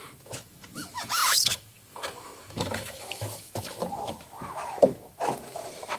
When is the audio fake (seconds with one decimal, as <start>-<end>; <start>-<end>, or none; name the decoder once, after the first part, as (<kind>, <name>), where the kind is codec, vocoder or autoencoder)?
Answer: 0.0-6.0 (autoencoder, DAC-VAE)